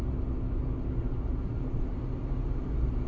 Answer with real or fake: real